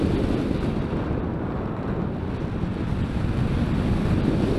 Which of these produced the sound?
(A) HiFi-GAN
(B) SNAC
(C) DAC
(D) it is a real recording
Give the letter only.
D